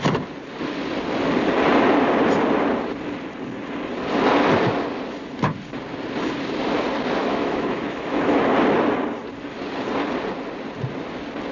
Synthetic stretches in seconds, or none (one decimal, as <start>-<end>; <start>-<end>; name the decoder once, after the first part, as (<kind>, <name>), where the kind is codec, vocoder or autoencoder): 7.2-8.4 (autoencoder, DAC-VAE)